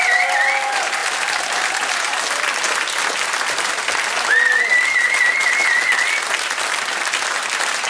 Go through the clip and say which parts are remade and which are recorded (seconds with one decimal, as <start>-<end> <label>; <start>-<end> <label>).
0.0-7.9 recorded